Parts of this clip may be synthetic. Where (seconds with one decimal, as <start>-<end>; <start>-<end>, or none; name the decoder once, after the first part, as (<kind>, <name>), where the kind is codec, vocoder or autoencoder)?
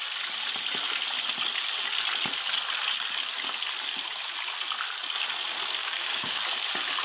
5.8-6.4 (codec, DAC)